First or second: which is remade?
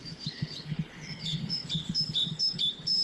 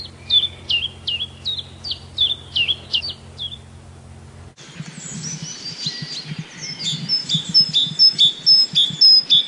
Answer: first